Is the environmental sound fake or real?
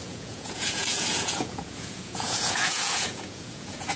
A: fake